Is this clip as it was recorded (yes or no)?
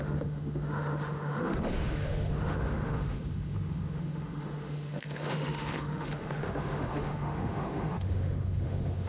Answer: no